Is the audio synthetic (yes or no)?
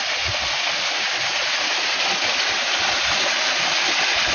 no